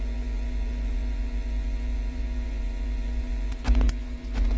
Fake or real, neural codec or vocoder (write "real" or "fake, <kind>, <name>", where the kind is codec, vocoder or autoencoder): fake, vocoder, Vocos